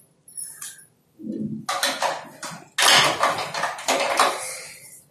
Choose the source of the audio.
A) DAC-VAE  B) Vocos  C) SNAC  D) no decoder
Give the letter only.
D